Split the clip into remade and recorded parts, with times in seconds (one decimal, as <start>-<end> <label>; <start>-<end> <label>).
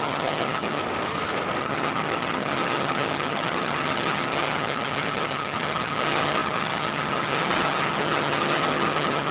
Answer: 0.0-0.8 remade; 0.8-1.6 recorded; 1.6-9.3 remade